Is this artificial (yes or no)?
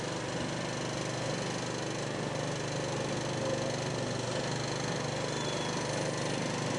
no